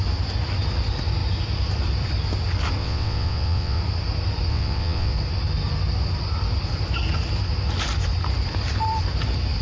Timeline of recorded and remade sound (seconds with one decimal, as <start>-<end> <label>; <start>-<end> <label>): 0.0-2.8 recorded; 2.8-3.8 remade; 3.8-4.5 recorded; 4.5-5.1 remade; 5.1-9.6 recorded